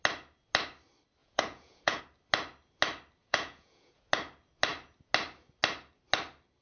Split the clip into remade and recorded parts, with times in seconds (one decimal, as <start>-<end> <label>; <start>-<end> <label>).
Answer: 0.0-1.2 recorded; 1.2-2.0 remade; 2.0-3.2 recorded; 3.2-4.0 remade; 4.0-6.6 recorded